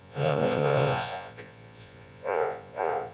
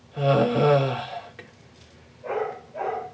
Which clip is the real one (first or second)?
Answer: second